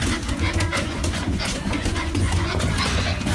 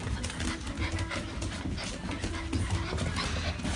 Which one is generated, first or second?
first